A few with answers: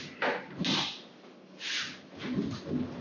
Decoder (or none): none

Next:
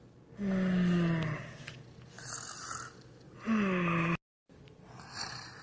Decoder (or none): none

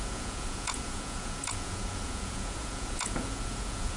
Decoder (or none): vocoder, Vocos